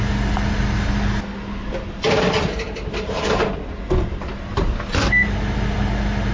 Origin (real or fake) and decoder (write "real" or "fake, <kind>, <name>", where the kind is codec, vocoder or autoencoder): real